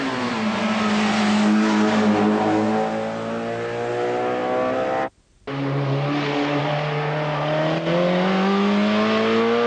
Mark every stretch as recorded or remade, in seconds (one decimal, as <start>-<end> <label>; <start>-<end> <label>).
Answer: 0.0-9.7 recorded